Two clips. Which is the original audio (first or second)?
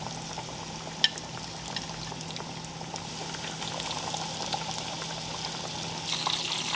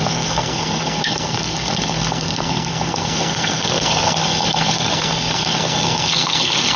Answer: first